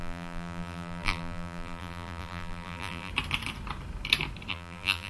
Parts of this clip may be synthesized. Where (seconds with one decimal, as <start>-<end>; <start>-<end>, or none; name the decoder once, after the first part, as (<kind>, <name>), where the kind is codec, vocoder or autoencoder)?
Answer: 0.0-3.1 (vocoder, BigVGAN v2); 4.5-5.1